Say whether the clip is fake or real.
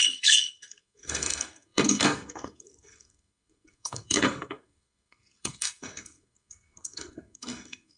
fake